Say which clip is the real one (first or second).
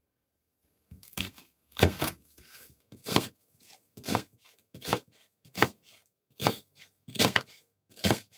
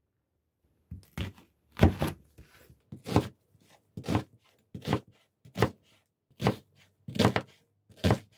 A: second